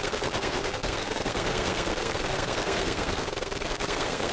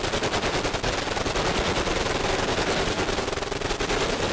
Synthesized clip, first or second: first